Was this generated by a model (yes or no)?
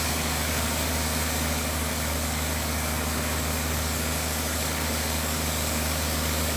yes